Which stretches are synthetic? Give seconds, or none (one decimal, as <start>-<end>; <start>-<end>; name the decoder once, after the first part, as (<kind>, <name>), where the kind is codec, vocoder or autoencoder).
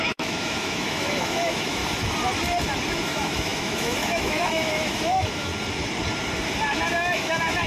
0.0-1.8 (autoencoder, DAC-VAE); 3.0-5.5; 6.7-7.7